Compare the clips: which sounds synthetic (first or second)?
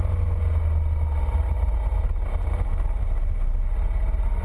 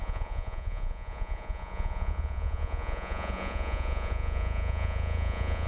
second